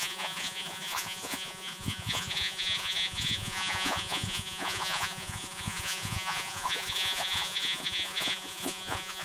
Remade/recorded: remade